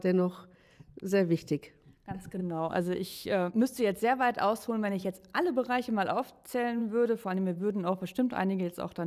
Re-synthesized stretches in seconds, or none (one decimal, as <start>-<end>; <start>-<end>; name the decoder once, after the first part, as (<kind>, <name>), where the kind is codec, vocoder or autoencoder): 2.4-3.5 (autoencoder, DAC-VAE)